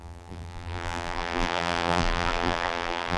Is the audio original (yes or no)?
no